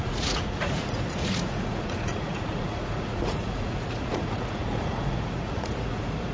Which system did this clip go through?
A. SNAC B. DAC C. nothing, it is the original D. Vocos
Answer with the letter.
D